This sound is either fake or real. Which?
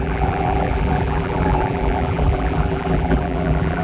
fake